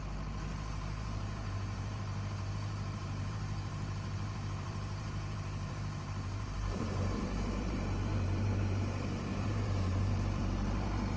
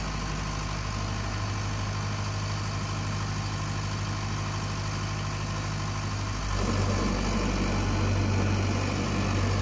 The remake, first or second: first